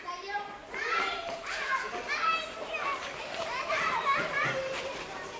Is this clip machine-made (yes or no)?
yes